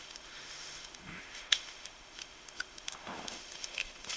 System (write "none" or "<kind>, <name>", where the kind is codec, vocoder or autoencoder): autoencoder, DAC-VAE